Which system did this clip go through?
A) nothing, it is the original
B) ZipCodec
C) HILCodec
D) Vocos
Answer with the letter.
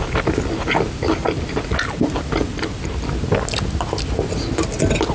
A